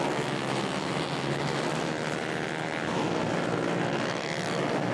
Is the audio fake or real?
real